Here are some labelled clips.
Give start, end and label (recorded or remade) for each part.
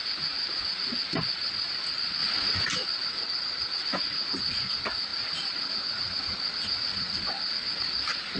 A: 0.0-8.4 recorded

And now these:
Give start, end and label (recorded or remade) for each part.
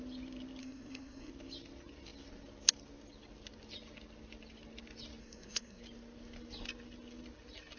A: 0.0-0.6 recorded; 0.6-1.3 remade; 1.3-5.2 recorded; 5.2-5.8 remade; 5.8-7.8 recorded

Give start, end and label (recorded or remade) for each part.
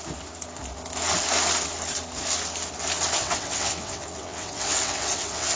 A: 0.0-3.2 recorded; 3.2-5.6 remade